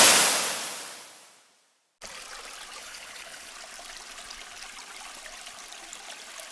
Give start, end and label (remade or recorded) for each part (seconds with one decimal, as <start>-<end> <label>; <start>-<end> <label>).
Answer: 0.0-2.8 recorded; 2.8-3.5 remade; 3.5-6.5 recorded